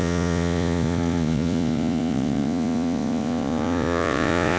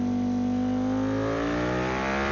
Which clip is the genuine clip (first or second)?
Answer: second